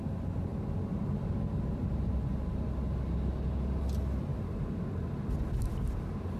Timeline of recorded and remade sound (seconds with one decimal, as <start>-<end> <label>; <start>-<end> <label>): 0.0-6.4 recorded